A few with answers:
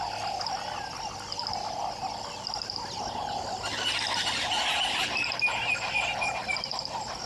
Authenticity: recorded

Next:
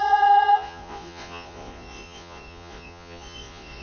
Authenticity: remade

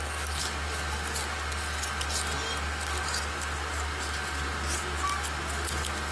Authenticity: recorded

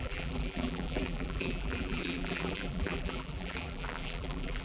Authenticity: remade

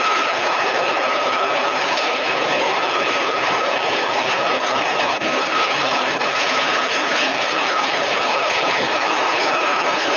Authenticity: remade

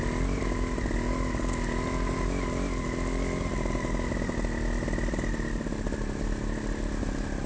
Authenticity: recorded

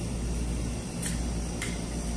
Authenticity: recorded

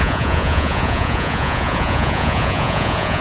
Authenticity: remade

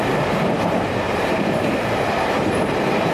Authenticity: remade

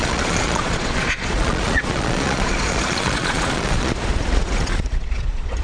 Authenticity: remade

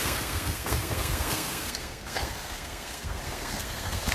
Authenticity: remade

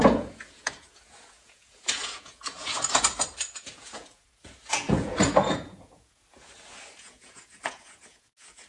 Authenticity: remade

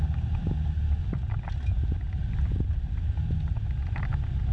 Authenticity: recorded